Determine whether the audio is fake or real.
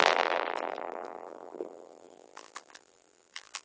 fake